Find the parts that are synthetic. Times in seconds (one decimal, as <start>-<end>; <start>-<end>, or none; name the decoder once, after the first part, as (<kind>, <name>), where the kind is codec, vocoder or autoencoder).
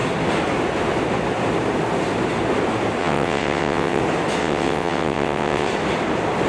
3.0-4.0 (vocoder, WaveNeXt); 4.4-5.7